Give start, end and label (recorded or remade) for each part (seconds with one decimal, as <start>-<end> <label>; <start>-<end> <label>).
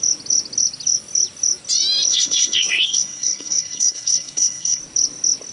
0.0-2.1 recorded; 2.1-4.8 remade; 4.8-5.5 recorded